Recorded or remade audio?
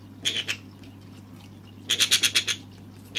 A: remade